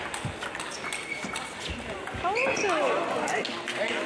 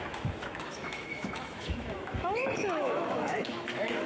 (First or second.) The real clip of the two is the first